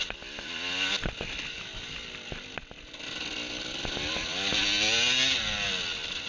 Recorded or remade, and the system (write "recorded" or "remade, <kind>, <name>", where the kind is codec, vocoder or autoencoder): recorded